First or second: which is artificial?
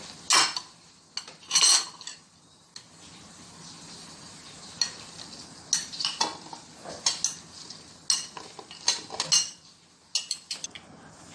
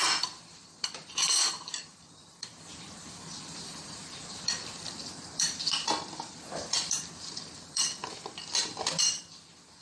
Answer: second